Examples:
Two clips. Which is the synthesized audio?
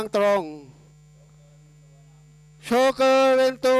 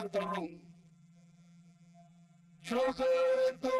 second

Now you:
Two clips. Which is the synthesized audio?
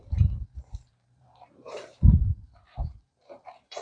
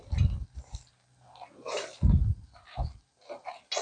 first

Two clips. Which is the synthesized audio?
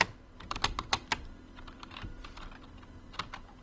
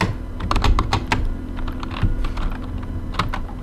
first